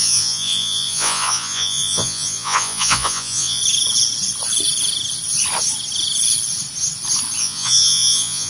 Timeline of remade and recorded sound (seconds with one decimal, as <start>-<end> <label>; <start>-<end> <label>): 0.0-3.6 remade; 3.6-7.4 recorded; 7.4-8.5 remade